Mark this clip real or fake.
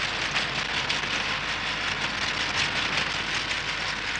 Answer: real